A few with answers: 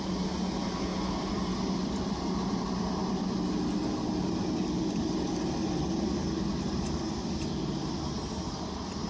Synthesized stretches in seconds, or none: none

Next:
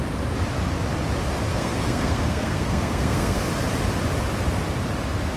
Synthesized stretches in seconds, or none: 1.5-3.4 (codec, SNAC)

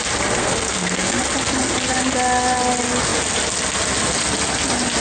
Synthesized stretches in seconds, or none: 0.4-1.2 (codec, SNAC)

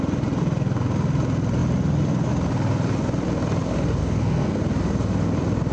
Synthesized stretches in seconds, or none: 4.0-4.6 (codec, SNAC)

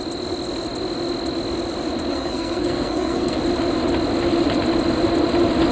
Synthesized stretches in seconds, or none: 2.1-3.4 (codec, SNAC)

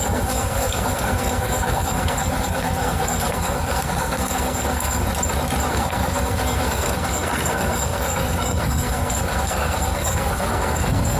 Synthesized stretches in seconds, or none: 0.0-5.0 (codec, SNAC); 5.7-11.2

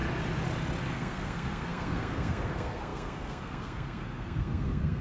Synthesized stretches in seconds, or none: 0.8-5.0 (codec, SNAC)